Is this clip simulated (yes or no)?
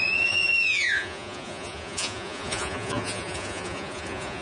yes